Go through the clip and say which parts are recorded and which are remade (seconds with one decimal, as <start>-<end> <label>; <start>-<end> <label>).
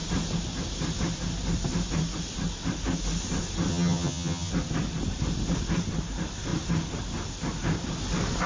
0.0-3.7 recorded; 3.7-4.5 remade; 4.5-8.5 recorded